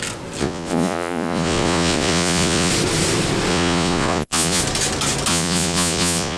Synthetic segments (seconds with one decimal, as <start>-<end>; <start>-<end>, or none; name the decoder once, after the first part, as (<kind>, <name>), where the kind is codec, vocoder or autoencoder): 0.4-2.7 (vocoder, Vocos); 3.5-4.6; 5.3-6.4